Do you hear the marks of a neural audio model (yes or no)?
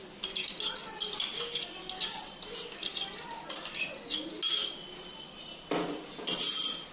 no